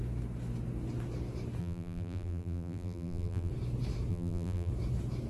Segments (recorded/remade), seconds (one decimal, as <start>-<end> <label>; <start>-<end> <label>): 0.0-1.6 recorded; 1.6-3.5 remade; 3.5-4.1 recorded; 4.1-4.7 remade; 4.7-5.3 recorded